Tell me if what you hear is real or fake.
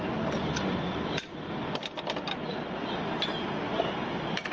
real